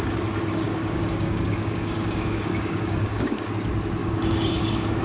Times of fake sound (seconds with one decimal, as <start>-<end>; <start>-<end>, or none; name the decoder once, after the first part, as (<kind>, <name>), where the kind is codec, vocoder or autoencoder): 0.5-3.5 (codec, DAC); 4.0-5.0